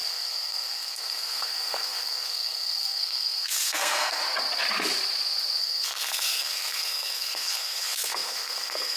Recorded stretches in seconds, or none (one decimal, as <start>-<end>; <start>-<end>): 4.2-5.6